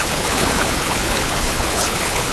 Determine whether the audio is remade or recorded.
remade